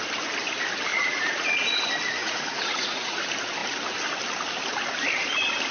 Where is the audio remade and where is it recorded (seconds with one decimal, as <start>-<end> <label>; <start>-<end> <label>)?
0.0-0.9 recorded; 0.9-1.7 remade; 1.7-2.2 recorded; 2.2-3.2 remade; 3.2-5.7 recorded

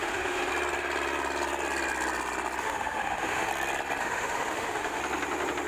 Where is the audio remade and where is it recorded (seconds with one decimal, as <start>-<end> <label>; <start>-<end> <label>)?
0.0-0.5 remade; 0.5-2.6 recorded; 2.6-3.5 remade; 3.5-4.0 recorded; 4.0-5.0 remade; 5.0-5.7 recorded